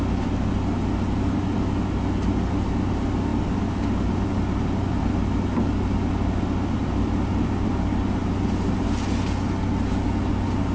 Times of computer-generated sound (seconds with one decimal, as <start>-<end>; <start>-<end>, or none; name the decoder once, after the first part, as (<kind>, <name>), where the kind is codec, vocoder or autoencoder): 6.8-7.7 (vocoder, BigVGAN v2)